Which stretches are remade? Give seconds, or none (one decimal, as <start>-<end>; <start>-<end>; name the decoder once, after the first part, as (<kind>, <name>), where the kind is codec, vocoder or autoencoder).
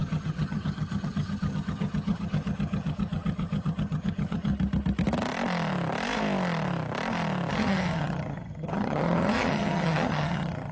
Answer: 0.0-4.5 (vocoder, HiFi-GAN); 7.5-10.7